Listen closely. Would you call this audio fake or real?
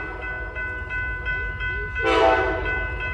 real